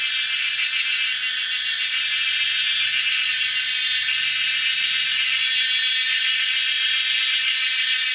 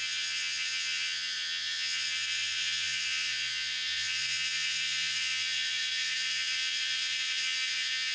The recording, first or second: first